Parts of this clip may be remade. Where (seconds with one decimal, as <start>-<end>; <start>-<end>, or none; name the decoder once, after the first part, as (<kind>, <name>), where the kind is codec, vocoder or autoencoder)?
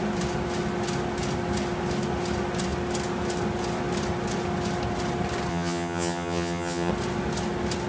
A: 5.5-6.9 (vocoder, HiFi-GAN)